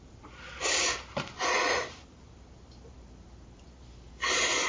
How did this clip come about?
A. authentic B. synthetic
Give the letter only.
B